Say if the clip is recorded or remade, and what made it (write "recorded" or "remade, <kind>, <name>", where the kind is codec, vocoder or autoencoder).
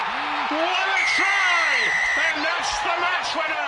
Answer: recorded